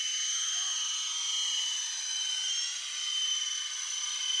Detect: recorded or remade recorded